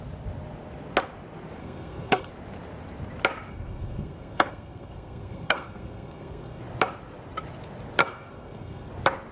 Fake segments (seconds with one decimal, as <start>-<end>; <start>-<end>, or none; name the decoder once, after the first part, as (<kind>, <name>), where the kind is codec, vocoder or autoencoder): 1.6-2.3 (codec, SNAC); 3.5-6.6; 8.0-8.9